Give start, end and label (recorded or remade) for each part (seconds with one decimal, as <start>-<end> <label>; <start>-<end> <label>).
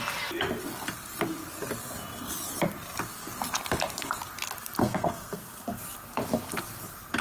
0.0-4.8 recorded; 4.8-5.8 remade; 5.8-7.2 recorded